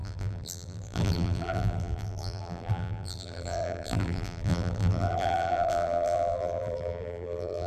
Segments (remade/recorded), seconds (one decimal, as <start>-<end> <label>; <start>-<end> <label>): 0.0-7.7 remade